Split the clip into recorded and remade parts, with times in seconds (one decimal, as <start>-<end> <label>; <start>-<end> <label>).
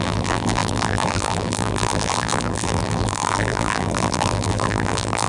0.0-5.3 remade